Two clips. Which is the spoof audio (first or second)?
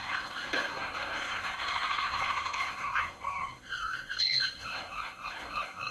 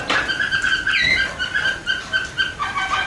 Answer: first